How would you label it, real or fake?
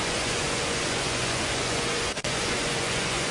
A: fake